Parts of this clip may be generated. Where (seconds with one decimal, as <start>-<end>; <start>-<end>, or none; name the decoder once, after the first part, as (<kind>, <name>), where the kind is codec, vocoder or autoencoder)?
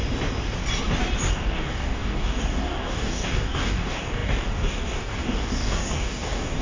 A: 1.3-6.6 (codec, DAC)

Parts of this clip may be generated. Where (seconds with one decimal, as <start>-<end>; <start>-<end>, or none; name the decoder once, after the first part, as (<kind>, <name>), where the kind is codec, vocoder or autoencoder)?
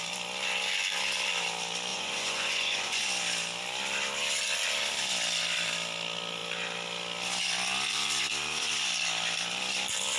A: 1.9-3.0 (vocoder, Vocos)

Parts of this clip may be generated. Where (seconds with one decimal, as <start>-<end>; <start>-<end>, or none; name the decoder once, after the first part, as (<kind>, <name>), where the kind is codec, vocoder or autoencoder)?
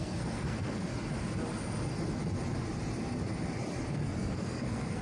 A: 0.0-0.9 (codec, SNAC); 3.9-5.0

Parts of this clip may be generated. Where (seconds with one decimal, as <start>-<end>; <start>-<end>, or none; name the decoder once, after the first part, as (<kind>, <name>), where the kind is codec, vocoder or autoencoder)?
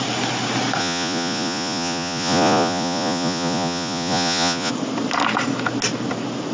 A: 0.8-4.7 (vocoder, Vocos)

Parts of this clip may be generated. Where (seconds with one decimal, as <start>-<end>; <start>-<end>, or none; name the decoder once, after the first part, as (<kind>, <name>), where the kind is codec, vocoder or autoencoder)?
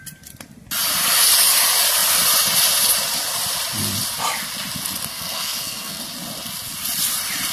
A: 5.1-6.0 (codec, SNAC)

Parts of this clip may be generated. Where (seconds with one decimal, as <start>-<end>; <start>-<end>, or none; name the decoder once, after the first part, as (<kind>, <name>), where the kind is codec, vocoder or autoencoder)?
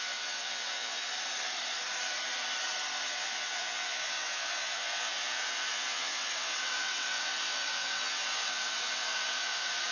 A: 0.0-1.1 (vocoder, WaveNeXt); 3.1-9.9